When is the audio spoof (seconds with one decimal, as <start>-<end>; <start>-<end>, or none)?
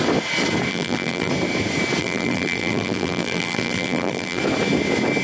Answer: 0.7-1.3; 2.0-4.4